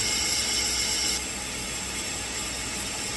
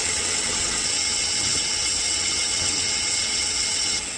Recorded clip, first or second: first